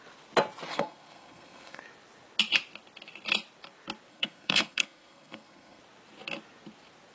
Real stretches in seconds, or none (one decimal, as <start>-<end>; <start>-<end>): 0.0-0.7; 1.8-4.1; 5.8-7.1